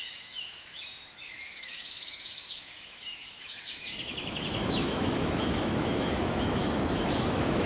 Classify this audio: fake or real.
fake